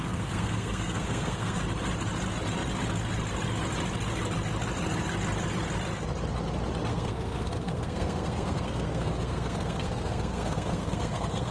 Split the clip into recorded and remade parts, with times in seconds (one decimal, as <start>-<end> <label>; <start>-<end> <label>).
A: 0.0-1.6 remade; 1.6-6.9 recorded; 6.9-11.5 remade

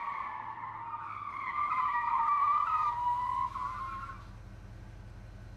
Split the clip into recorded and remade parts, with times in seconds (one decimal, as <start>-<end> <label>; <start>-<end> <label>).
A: 0.0-1.5 recorded; 1.5-2.2 remade; 2.2-5.6 recorded

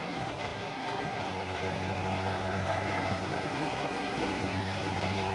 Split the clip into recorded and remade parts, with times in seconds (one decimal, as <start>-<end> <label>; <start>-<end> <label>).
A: 0.0-5.3 remade

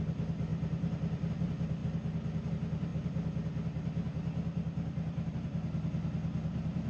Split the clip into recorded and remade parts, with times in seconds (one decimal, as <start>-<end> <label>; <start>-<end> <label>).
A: 0.0-6.9 recorded

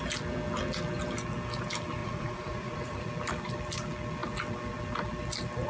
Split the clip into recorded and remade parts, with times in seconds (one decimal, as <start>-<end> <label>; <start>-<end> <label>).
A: 0.0-2.0 recorded; 2.0-3.1 remade; 3.1-5.7 recorded

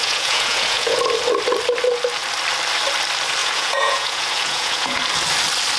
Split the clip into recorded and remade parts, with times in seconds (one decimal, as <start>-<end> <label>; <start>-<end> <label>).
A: 0.0-1.0 remade; 1.0-3.4 recorded; 3.4-5.0 remade; 5.0-5.8 recorded

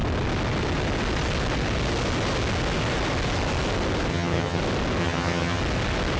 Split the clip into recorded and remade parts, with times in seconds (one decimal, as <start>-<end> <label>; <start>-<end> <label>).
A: 0.0-4.1 recorded; 4.1-4.6 remade; 4.6-5.0 recorded; 5.0-5.6 remade; 5.6-6.2 recorded

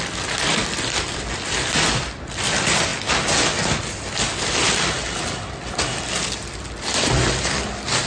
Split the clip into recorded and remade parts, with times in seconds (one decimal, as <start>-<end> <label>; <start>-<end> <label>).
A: 0.0-0.6 recorded; 0.6-1.5 remade; 1.5-6.9 recorded; 6.9-7.6 remade; 7.6-8.1 recorded